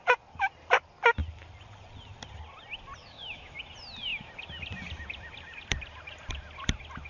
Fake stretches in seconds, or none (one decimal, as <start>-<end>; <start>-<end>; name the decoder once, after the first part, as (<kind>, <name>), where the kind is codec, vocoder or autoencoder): 3.0-3.6 (autoencoder, DAC-VAE)